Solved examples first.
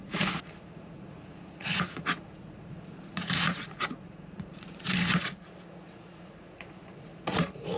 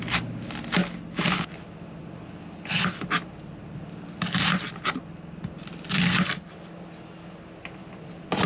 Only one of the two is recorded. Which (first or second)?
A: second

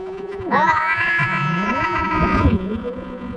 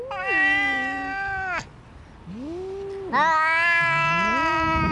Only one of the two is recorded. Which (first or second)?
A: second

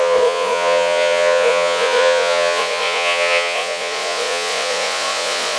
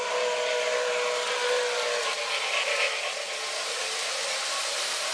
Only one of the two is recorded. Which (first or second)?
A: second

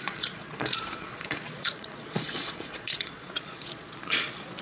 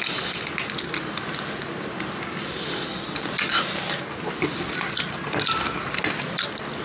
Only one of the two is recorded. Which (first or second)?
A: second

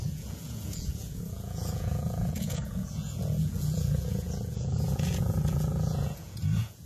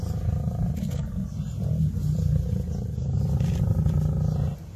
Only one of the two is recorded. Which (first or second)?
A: second